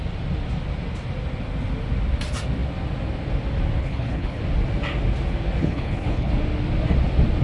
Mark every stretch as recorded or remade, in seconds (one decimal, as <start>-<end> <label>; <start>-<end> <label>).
0.0-3.8 recorded; 3.8-4.4 remade; 4.4-5.6 recorded; 5.6-6.3 remade; 6.3-7.4 recorded